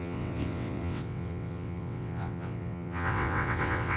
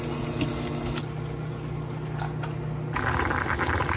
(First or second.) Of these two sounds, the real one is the second